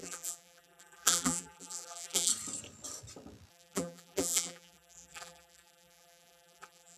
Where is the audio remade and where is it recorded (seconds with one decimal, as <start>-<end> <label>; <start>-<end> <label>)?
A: 0.0-2.3 remade; 2.3-3.5 recorded; 3.5-7.0 remade